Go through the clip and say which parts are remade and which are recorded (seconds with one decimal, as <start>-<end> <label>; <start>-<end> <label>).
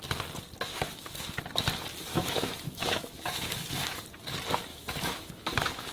0.0-0.7 recorded; 0.7-1.4 remade; 1.4-2.1 recorded; 2.1-4.0 remade; 4.0-4.7 recorded; 4.7-5.9 remade